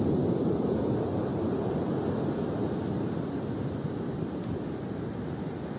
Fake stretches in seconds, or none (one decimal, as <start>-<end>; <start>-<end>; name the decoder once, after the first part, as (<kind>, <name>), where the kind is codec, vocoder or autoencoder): none

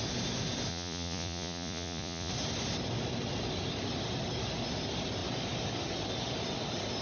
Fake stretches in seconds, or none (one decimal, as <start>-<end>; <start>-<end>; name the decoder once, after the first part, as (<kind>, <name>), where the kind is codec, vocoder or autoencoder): 0.7-2.3 (vocoder, Vocos)

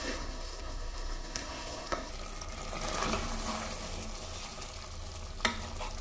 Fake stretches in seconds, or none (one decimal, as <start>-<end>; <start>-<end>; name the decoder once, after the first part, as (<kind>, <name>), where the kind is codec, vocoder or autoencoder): 0.0-2.1 (codec, SNAC)